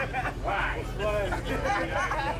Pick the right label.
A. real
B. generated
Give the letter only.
A